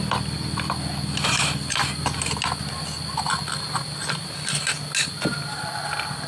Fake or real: real